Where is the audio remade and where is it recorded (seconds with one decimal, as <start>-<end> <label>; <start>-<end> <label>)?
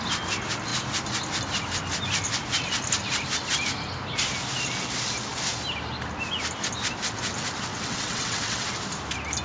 0.0-7.7 recorded; 7.7-8.7 remade; 8.7-9.4 recorded